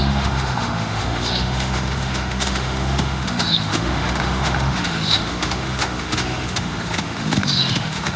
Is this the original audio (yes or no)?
no